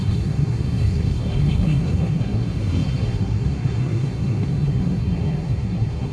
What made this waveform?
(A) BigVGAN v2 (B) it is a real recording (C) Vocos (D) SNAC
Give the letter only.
D